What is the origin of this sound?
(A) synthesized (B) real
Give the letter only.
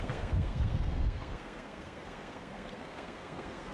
A